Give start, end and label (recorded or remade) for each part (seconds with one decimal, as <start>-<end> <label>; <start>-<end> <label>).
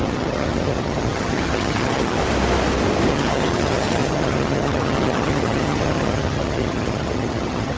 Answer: 0.0-2.2 remade; 2.2-3.1 recorded; 3.1-7.8 remade